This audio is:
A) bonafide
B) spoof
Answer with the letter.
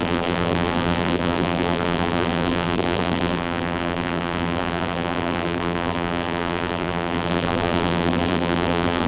B